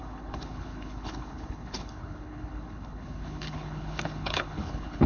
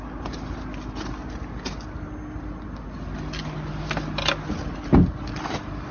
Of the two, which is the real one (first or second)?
second